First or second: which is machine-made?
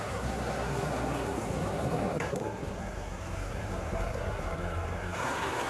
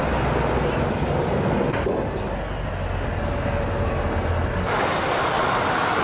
first